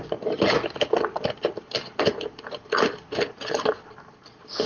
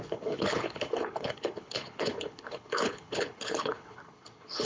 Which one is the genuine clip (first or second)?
first